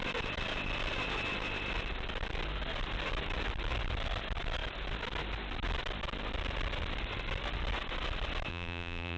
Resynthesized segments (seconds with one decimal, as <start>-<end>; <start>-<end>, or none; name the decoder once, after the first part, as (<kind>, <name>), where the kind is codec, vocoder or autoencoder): 8.5-9.2 (vocoder, BigVGAN v2)